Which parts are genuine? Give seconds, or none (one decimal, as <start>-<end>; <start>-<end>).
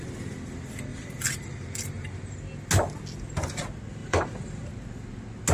0.0-0.9; 2.4-4.0; 4.7-5.5